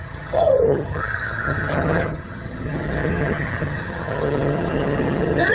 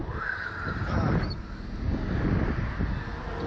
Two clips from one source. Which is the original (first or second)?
second